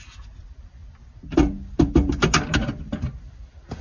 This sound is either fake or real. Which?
real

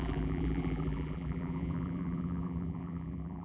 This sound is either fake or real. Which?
fake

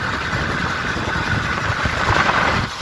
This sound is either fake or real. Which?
real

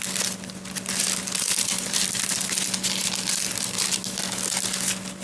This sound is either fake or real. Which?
real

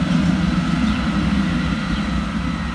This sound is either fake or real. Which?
fake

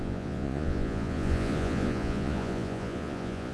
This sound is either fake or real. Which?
fake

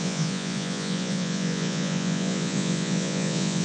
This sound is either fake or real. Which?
fake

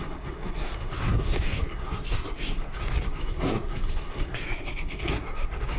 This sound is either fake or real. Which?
fake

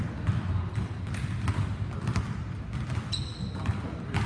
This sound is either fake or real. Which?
fake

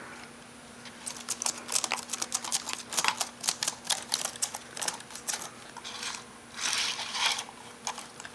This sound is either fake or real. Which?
real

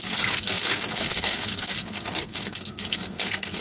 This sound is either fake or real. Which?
fake